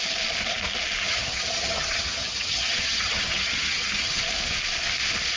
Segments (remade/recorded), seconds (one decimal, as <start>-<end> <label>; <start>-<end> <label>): 0.0-1.0 recorded; 1.0-4.2 remade; 4.2-5.4 recorded